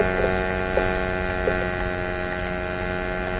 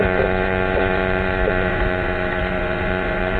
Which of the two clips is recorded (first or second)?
first